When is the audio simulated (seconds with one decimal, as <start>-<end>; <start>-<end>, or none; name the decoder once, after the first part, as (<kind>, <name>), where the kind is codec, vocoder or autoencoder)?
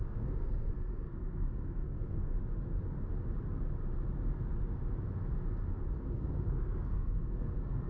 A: 0.0-2.3 (codec, SNAC); 6.1-7.9